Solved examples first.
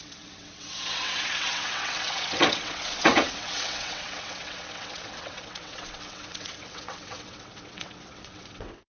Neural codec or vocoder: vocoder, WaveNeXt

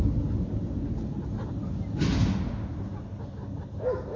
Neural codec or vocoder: none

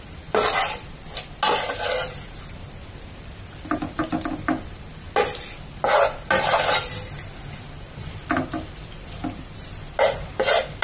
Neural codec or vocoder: none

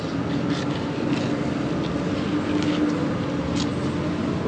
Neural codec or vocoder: none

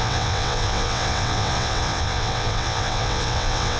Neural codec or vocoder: vocoder, WaveNeXt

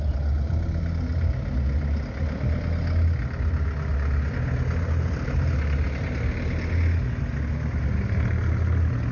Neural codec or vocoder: none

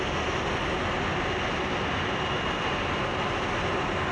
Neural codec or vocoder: none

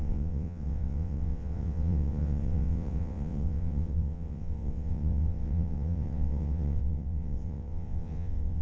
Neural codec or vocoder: vocoder, WaveNeXt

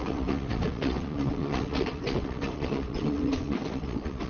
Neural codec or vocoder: vocoder, WaveNeXt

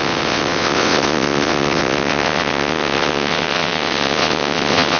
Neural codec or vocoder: vocoder, WaveNeXt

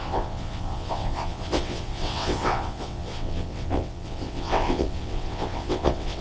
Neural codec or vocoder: vocoder, WaveNeXt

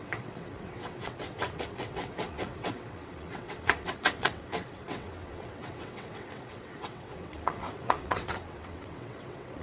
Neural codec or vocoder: vocoder, WaveNeXt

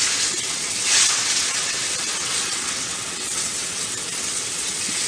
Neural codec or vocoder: vocoder, WaveNeXt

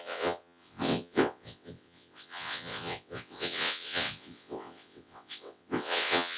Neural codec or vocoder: vocoder, WaveNeXt